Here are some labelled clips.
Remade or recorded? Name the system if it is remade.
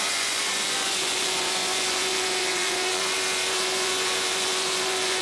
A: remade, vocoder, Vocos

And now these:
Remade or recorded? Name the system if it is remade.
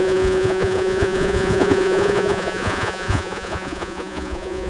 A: remade, vocoder, Vocos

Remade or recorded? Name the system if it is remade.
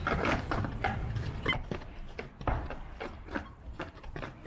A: remade, vocoder, BigVGAN v2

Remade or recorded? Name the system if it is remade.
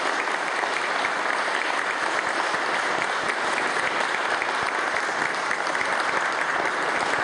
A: recorded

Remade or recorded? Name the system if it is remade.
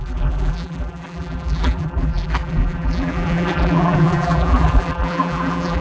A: remade, vocoder, BigVGAN v2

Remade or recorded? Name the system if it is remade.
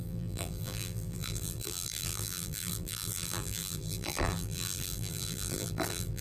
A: remade, vocoder, BigVGAN v2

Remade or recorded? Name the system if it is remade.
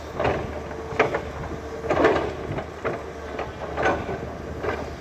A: recorded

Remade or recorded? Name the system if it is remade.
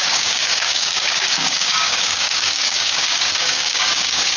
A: remade, codec, DAC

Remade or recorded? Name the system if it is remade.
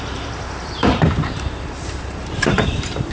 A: remade, vocoder, BigVGAN v2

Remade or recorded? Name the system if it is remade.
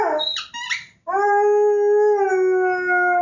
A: recorded